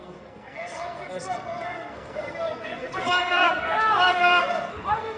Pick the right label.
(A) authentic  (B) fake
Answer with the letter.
B